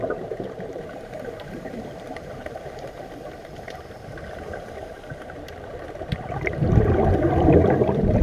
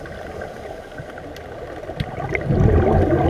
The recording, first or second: second